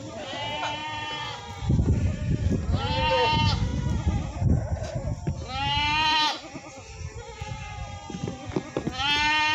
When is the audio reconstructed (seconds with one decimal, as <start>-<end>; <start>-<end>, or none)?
none